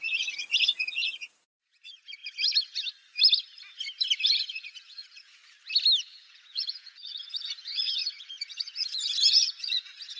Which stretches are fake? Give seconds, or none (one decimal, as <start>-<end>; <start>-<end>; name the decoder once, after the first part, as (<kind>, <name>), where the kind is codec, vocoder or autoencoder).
0.0-2.2 (vocoder, Vocos); 4.8-5.4; 6.0-10.2